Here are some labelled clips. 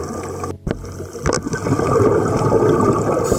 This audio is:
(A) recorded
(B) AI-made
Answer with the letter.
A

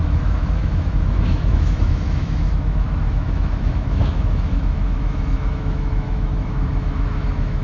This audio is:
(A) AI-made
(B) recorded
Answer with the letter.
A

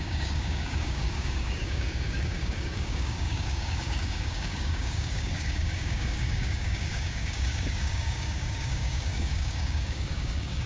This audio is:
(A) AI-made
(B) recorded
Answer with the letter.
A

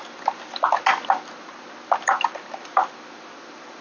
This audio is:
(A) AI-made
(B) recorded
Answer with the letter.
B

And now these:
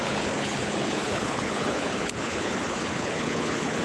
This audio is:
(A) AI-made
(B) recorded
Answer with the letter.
A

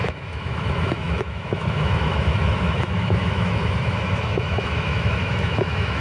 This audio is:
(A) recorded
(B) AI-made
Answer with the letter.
B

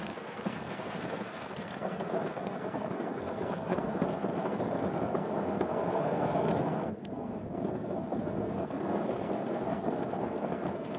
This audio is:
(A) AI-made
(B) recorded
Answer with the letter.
A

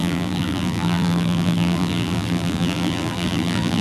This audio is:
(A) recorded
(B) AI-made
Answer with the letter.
B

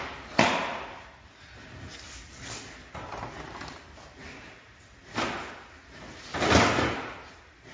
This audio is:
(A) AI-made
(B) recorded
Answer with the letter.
B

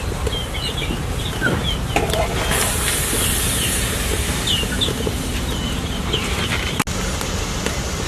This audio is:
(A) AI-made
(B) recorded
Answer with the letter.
B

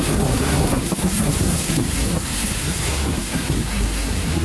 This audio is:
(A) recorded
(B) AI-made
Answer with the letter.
B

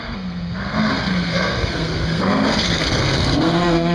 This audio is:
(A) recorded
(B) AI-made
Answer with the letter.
B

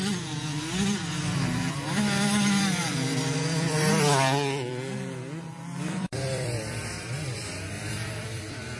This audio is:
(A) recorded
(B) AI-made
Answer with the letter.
B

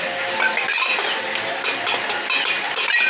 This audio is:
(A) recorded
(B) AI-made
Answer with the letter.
A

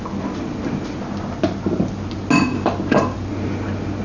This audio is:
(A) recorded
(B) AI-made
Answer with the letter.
A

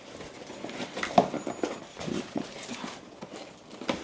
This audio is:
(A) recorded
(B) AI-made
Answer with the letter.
A